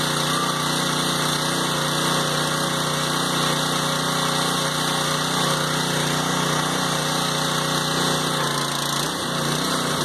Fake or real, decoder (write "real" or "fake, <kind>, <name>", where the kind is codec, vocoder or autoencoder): real